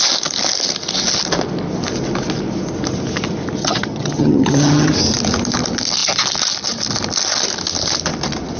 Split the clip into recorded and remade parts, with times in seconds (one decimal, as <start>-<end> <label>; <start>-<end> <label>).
0.0-3.6 recorded; 3.6-4.9 remade; 4.9-8.6 recorded

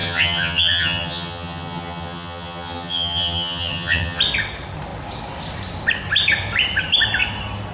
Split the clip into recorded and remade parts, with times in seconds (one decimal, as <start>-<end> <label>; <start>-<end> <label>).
0.0-4.2 remade; 4.2-7.7 recorded

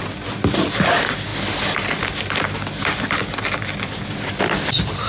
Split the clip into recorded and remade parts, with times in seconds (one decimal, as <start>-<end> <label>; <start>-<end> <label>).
0.0-5.1 recorded

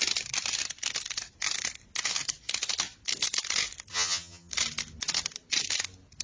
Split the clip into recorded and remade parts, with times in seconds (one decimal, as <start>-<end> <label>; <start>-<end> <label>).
0.0-3.9 recorded; 3.9-4.5 remade; 4.5-6.2 recorded

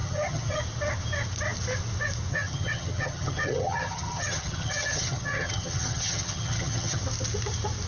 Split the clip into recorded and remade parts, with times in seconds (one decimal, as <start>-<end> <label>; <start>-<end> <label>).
0.0-0.6 remade; 0.6-2.3 recorded; 2.3-7.0 remade; 7.0-7.9 recorded

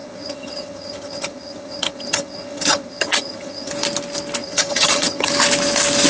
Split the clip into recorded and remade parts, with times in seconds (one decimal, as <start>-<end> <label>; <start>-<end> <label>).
0.0-3.7 remade; 3.7-4.4 recorded; 4.4-5.3 remade; 5.3-6.1 recorded

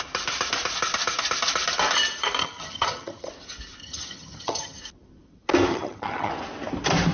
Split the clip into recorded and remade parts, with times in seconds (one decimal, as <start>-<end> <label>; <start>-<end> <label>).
0.0-2.4 recorded; 2.4-3.3 remade; 3.3-3.8 recorded; 3.8-4.8 remade; 4.8-5.7 recorded; 5.7-6.3 remade; 6.3-7.1 recorded